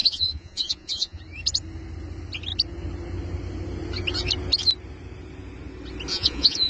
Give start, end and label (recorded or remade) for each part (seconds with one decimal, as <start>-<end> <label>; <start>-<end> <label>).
0.0-1.2 remade; 1.2-6.1 recorded; 6.1-6.7 remade

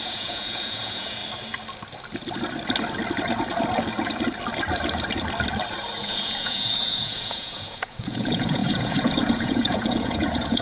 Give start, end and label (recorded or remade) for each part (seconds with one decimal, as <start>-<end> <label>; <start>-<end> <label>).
0.0-1.2 remade; 1.2-6.0 recorded; 6.0-10.6 remade

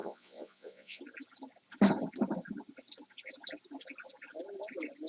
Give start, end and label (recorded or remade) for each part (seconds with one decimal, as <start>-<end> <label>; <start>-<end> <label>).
0.0-1.0 remade; 1.0-5.1 recorded

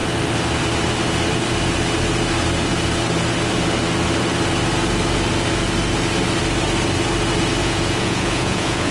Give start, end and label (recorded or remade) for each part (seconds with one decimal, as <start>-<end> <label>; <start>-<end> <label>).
0.0-7.6 recorded; 7.6-8.9 remade

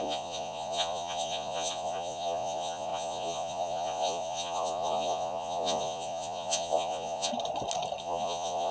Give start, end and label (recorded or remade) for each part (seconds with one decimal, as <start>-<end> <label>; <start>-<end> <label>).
0.0-7.3 remade; 7.3-8.0 recorded; 8.0-8.7 remade

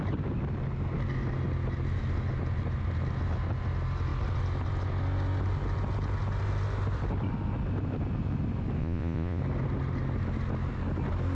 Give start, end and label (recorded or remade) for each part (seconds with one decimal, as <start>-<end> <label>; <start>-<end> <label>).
0.0-8.8 recorded; 8.8-9.4 remade; 9.4-11.3 recorded

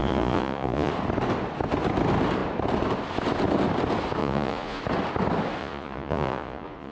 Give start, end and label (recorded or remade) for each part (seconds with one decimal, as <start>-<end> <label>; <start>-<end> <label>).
0.0-0.9 remade; 0.9-4.2 recorded; 4.2-4.8 remade; 4.8-5.6 recorded; 5.6-6.9 remade